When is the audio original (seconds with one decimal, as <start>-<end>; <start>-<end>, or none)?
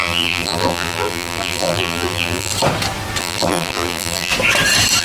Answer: 2.5-3.2; 4.3-5.0